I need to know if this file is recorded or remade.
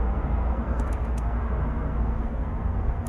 remade